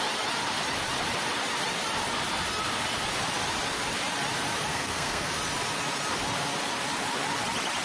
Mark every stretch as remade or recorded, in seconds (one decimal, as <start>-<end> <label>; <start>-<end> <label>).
0.0-4.7 recorded; 4.7-5.3 remade; 5.3-7.8 recorded